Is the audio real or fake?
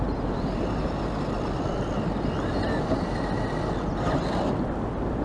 real